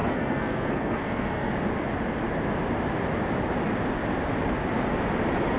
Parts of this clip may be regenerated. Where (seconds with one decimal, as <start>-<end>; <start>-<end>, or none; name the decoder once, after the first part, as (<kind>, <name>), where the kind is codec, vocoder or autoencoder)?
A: 0.0-1.5 (codec, SNAC)